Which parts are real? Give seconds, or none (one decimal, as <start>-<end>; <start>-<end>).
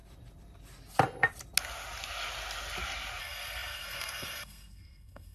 0.0-3.2